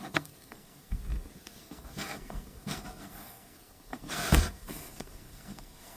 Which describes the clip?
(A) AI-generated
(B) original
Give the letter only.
A